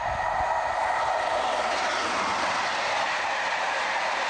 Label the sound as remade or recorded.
recorded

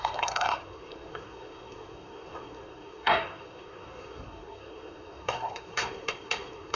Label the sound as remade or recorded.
remade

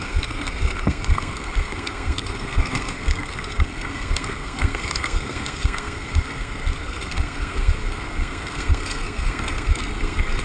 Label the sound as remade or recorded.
remade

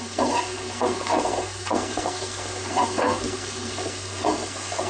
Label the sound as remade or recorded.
remade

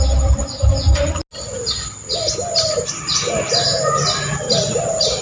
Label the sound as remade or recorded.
recorded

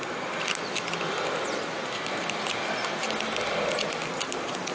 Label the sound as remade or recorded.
recorded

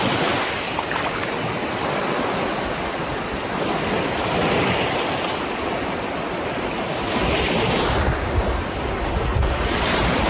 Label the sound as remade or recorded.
recorded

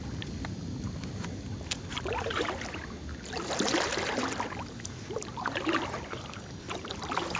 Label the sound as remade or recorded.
recorded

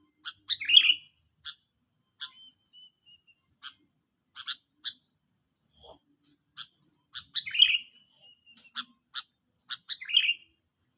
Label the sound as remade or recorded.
recorded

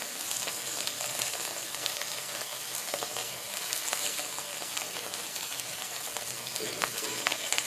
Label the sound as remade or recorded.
remade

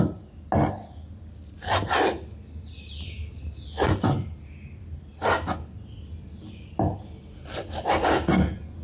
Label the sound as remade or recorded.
recorded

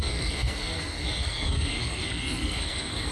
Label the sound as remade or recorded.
remade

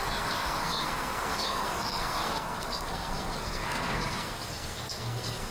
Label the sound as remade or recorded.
remade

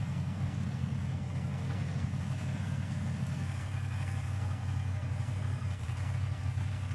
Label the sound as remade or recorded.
remade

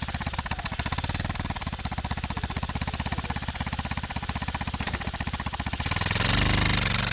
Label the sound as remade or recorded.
recorded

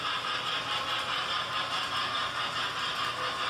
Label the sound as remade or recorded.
recorded